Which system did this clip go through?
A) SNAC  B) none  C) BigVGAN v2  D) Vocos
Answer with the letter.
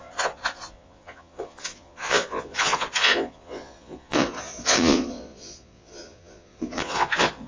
D